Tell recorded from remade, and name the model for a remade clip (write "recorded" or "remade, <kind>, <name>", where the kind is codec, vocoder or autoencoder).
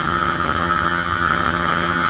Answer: remade, vocoder, HiFi-GAN